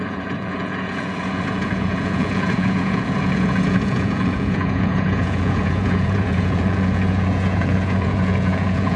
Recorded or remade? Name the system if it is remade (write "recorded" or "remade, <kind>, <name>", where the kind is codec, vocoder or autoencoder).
remade, vocoder, Vocos